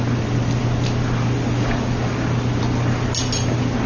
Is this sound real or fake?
real